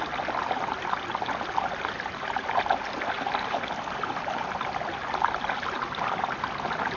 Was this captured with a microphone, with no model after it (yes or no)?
yes